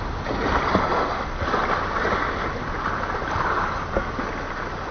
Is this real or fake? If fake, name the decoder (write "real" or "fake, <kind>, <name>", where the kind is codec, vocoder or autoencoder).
real